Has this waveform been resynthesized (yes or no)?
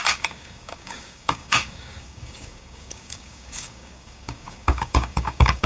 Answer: yes